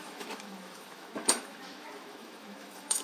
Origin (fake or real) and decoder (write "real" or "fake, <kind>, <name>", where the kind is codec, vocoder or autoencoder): fake, autoencoder, DAC-VAE